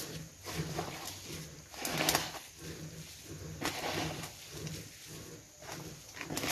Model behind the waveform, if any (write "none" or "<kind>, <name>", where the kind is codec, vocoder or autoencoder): none